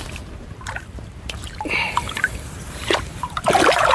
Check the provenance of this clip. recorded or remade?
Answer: remade